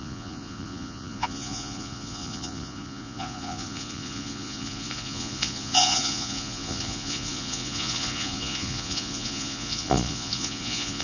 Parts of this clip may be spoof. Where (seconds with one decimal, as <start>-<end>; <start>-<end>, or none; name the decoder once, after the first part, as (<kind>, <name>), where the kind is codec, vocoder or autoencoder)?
0.0-11.0 (vocoder, Vocos)